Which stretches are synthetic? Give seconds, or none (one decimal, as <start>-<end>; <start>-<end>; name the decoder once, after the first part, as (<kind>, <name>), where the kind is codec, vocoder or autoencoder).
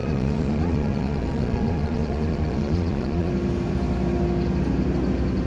0.0-3.3 (vocoder, Vocos)